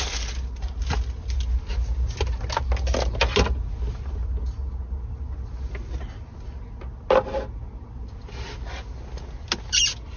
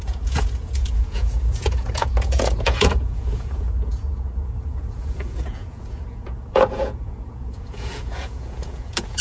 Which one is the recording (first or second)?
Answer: first